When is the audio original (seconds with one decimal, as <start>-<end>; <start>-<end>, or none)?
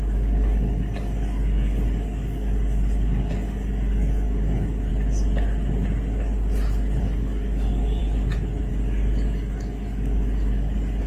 4.9-7.0; 8.0-8.7